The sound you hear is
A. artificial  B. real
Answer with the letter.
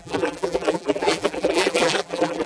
A